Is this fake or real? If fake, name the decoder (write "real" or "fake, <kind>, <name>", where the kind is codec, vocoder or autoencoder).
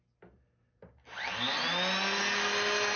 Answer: real